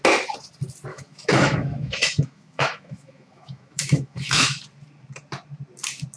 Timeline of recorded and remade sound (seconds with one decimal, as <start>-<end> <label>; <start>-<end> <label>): 0.0-0.9 recorded; 0.9-4.6 remade; 4.6-6.2 recorded